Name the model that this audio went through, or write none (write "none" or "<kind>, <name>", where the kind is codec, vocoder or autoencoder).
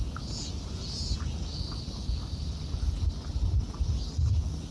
none